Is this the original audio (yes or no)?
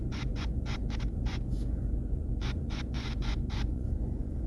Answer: no